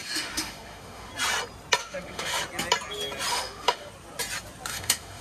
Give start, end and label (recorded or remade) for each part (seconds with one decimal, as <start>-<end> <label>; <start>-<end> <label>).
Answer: 0.0-1.1 remade; 1.1-1.8 recorded; 1.8-2.4 remade; 2.4-3.3 recorded; 3.3-3.9 remade; 3.9-4.7 recorded; 4.7-5.2 remade